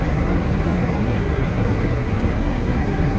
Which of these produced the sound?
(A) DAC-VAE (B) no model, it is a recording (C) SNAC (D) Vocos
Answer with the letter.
C